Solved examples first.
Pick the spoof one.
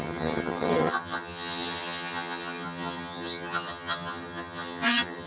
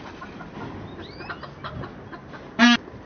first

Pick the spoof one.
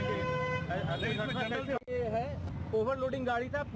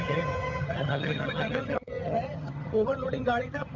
second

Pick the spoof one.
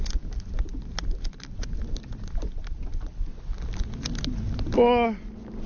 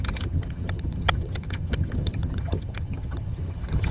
second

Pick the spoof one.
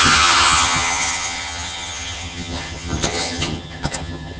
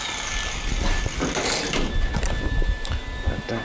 first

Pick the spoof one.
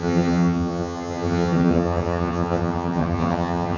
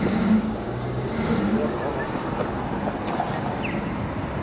first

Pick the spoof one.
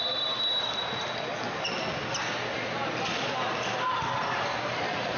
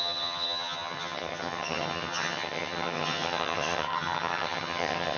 second